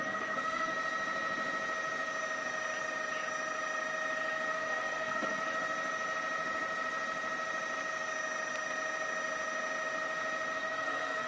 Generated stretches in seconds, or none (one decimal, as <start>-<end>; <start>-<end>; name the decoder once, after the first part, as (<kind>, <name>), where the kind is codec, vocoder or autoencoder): 0.0-0.7 (codec, SNAC); 4.5-5.4; 10.6-11.3